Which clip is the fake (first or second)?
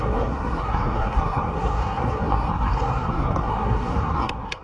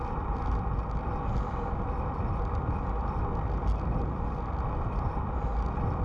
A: first